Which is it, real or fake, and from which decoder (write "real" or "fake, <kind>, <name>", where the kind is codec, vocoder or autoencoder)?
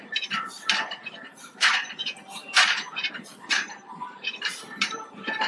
fake, vocoder, BigVGAN v2